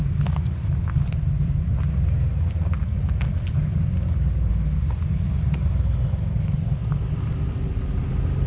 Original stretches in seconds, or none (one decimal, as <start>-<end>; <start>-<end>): 0.0-8.5